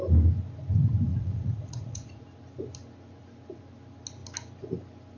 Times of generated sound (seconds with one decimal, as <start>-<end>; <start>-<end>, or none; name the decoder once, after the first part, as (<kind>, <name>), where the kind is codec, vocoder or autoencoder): 1.1-2.2 (vocoder, Vocos)